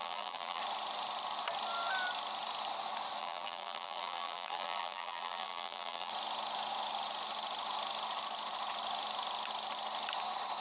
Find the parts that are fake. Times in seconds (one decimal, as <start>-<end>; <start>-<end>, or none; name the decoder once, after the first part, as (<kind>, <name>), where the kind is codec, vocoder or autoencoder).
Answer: 0.0-0.6 (vocoder, BigVGAN v2); 3.2-6.1